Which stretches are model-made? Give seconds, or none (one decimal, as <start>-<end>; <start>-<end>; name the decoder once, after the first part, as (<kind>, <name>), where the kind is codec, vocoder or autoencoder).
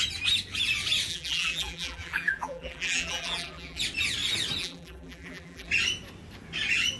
1.1-3.8 (vocoder, BigVGAN v2); 4.6-5.7